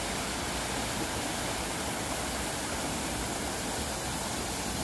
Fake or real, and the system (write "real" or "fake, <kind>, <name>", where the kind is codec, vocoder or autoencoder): real